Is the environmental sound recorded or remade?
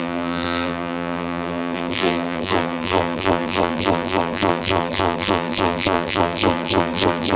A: remade